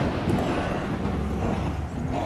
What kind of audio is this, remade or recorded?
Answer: recorded